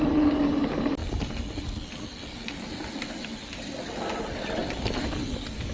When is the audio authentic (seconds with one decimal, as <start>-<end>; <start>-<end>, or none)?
0.0-5.7